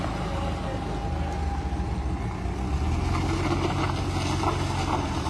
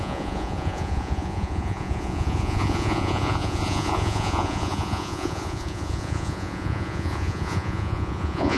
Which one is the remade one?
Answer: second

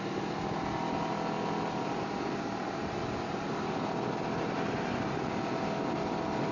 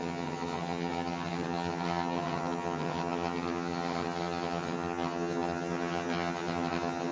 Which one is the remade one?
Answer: second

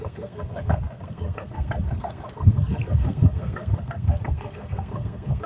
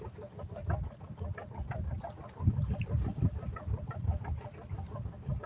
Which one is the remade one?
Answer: first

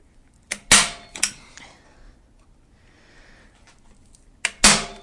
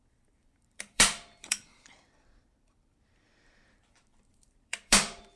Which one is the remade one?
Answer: second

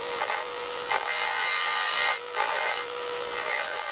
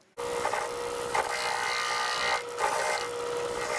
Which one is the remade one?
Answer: first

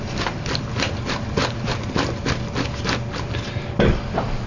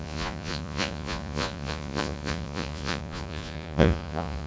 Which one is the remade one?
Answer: second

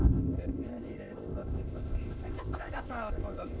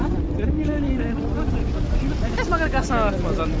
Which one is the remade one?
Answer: first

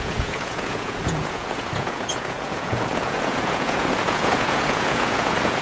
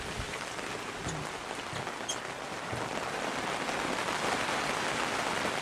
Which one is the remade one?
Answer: first